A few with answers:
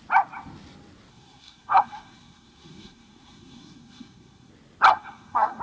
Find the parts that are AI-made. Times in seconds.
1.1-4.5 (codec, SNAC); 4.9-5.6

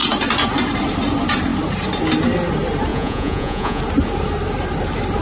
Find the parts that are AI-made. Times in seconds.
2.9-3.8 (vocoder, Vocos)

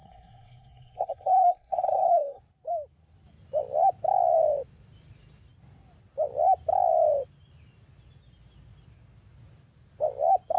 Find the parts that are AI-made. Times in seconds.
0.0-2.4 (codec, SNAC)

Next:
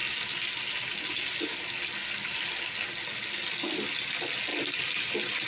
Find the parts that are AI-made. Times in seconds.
none

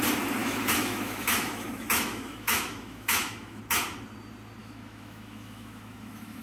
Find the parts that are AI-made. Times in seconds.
0.4-3.6 (autoencoder, DAC-VAE); 4.6-6.4